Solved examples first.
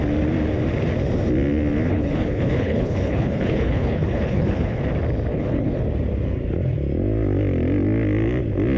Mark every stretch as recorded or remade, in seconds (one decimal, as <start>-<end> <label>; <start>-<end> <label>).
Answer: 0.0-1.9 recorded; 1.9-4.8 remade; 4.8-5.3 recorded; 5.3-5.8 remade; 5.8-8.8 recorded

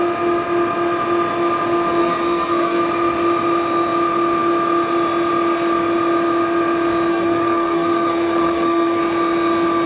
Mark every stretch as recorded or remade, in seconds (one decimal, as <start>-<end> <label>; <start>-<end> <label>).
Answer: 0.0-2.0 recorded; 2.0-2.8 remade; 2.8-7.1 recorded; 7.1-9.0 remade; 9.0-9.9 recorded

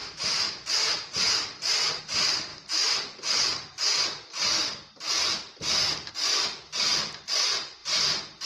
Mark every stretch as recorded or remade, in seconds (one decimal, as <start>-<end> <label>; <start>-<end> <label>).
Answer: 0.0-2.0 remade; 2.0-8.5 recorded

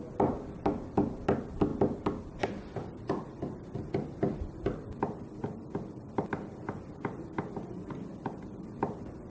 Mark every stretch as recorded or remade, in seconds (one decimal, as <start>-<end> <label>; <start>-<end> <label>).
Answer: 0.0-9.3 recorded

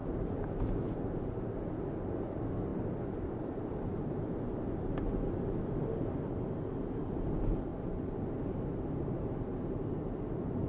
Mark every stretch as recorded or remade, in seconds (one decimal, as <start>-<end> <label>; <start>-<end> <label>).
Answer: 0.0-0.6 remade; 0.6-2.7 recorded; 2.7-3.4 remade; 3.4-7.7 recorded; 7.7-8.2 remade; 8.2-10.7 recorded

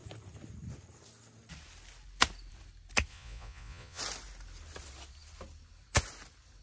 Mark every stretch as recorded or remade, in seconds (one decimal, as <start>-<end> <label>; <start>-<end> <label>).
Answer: 0.0-3.1 recorded; 3.1-4.0 remade; 4.0-6.6 recorded